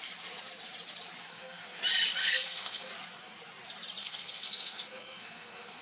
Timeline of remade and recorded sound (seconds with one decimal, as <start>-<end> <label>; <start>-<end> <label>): 0.0-1.2 recorded; 1.2-1.8 remade; 1.8-2.2 recorded; 2.2-2.9 remade; 2.9-4.0 recorded; 4.0-5.8 remade